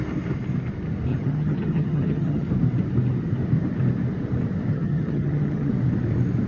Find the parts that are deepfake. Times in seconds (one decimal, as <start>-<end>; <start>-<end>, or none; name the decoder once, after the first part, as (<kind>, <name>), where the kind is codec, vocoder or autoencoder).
1.1-2.5 (vocoder, HiFi-GAN); 4.7-5.7